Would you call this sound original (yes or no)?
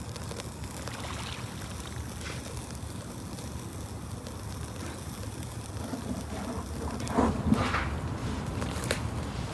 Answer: yes